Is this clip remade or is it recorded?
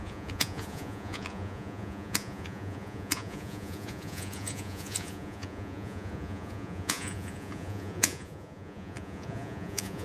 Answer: remade